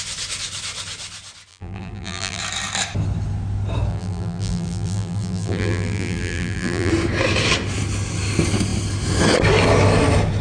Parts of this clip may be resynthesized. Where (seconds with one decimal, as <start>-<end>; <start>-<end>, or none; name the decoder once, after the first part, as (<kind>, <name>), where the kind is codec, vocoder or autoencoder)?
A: 1.5-2.4 (vocoder, BigVGAN v2); 3.9-6.9